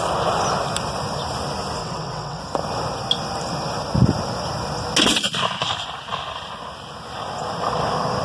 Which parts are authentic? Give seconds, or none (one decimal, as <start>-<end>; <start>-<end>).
0.0-1.8; 2.4-8.2